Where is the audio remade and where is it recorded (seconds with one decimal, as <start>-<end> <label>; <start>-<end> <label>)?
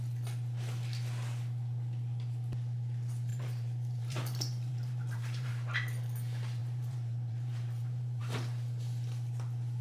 0.0-3.3 recorded; 3.3-5.5 remade; 5.5-6.6 recorded; 6.6-8.2 remade; 8.2-9.8 recorded